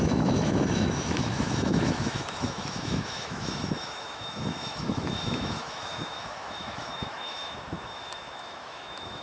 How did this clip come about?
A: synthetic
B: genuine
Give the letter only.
A